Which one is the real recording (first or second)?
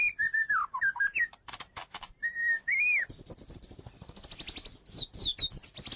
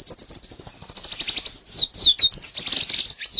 second